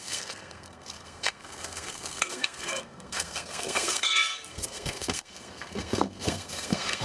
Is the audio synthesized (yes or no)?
yes